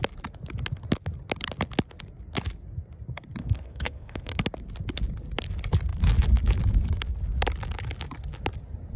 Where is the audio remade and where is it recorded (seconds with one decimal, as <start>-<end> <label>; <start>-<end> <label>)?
0.0-3.4 recorded; 3.4-4.4 remade; 4.4-9.0 recorded